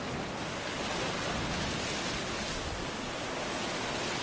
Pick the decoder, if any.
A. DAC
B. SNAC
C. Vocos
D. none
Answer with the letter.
D